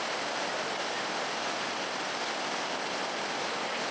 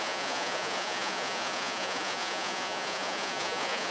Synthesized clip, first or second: second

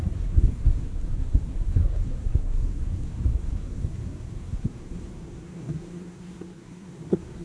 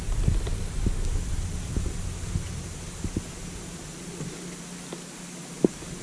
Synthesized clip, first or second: first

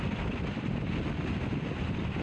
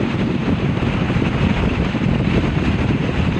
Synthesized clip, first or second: second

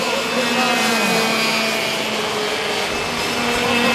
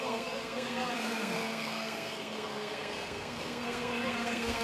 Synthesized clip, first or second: second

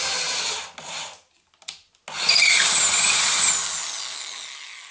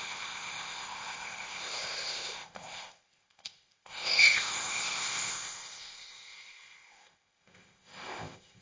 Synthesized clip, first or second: second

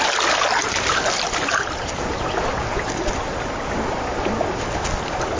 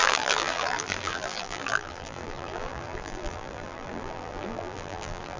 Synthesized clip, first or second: second